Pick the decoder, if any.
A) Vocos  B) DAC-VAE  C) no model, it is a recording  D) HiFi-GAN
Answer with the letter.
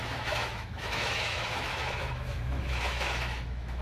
B